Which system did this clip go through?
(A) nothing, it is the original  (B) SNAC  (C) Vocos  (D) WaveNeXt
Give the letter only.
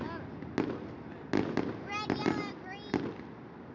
A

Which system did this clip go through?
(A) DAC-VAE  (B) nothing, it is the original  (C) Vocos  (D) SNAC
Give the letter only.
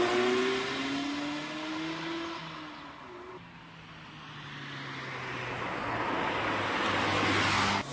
B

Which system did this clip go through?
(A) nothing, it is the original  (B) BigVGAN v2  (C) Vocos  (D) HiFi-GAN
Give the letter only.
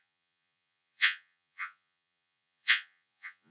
C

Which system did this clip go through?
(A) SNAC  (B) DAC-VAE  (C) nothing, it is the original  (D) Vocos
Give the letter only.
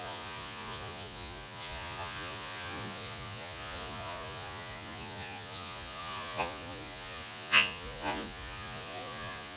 D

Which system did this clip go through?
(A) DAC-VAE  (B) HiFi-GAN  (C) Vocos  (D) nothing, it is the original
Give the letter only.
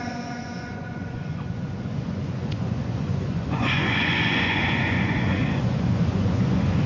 C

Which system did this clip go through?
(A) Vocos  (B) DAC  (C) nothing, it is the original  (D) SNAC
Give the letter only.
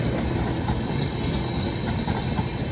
C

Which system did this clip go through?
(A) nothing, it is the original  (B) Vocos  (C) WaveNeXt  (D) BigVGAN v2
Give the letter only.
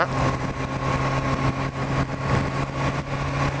A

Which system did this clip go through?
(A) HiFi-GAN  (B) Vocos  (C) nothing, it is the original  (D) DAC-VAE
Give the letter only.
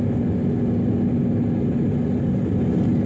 C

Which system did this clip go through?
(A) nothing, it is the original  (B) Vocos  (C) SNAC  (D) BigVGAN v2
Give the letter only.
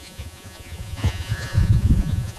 B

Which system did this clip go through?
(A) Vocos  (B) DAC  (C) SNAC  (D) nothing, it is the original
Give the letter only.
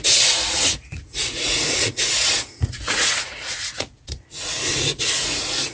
A